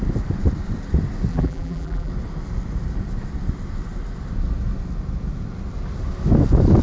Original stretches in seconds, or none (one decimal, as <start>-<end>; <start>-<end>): 0.0-1.3; 2.1-6.8